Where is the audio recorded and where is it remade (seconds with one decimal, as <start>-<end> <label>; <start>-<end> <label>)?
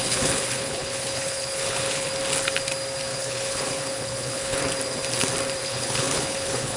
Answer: 0.0-2.1 remade; 2.1-3.1 recorded; 3.1-4.6 remade; 4.6-5.6 recorded; 5.6-6.8 remade